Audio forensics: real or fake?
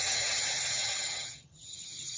fake